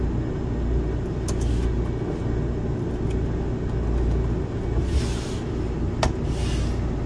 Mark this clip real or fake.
real